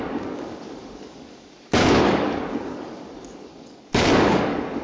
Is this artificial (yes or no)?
yes